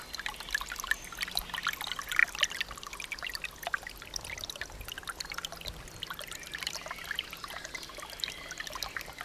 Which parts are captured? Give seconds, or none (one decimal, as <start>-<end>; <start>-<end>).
0.0-9.2